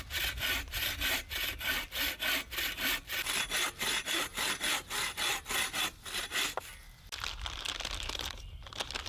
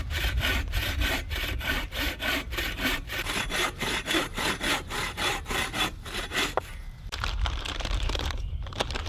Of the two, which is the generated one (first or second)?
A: second